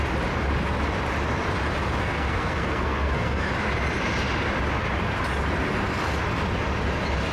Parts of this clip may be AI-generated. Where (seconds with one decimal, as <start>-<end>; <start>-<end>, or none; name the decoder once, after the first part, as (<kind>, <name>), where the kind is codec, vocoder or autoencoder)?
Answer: 2.0-3.4 (codec, SNAC)